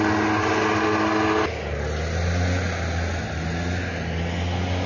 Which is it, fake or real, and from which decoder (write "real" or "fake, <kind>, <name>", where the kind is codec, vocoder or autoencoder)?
real